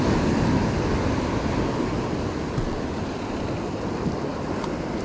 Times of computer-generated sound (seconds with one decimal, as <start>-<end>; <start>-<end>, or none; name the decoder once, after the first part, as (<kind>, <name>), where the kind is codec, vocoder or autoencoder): 4.3-5.0 (vocoder, BigVGAN v2)